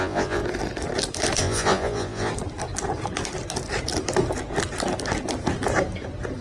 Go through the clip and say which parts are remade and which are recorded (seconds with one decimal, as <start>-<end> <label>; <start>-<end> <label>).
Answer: 0.0-0.4 remade; 0.4-1.4 recorded; 1.4-2.3 remade; 2.3-6.4 recorded